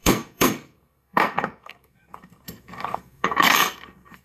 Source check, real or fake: fake